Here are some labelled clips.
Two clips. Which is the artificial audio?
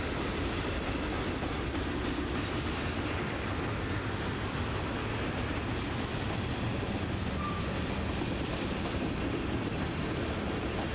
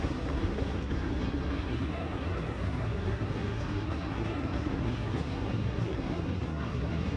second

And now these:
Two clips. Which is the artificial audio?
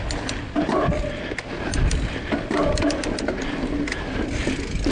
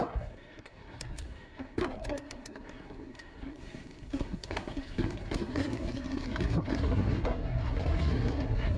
second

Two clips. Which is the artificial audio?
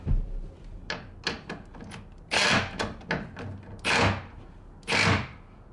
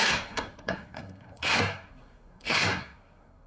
second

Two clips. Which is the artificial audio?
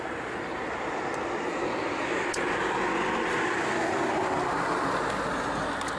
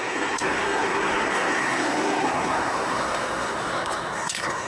second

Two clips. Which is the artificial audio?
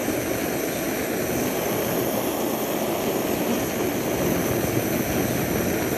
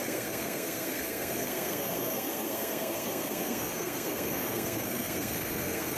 second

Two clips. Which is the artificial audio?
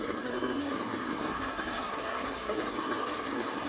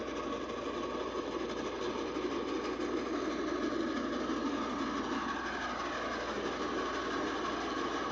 first